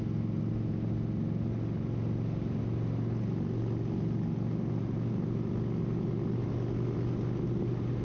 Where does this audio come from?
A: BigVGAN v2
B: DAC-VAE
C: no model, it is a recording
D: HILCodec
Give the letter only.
C